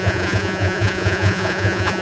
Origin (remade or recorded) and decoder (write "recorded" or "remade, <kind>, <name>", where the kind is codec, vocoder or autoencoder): remade, vocoder, Vocos